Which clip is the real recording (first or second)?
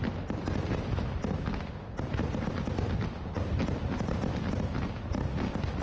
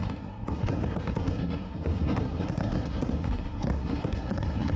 first